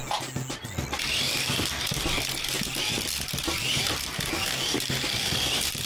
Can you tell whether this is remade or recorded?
recorded